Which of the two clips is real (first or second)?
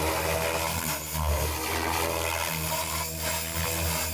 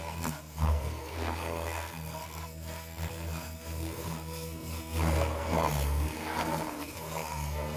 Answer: first